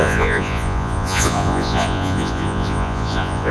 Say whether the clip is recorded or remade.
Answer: remade